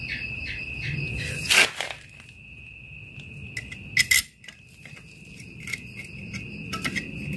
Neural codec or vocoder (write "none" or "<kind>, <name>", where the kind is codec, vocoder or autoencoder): none